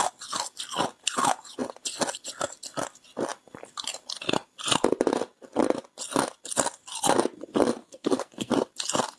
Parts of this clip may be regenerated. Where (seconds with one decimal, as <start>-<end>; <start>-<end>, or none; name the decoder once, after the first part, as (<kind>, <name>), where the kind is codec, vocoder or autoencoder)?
7.8-8.5 (codec, SNAC)